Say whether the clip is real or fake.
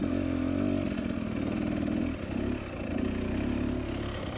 real